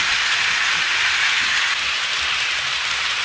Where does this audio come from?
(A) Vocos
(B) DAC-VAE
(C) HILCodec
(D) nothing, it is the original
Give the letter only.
D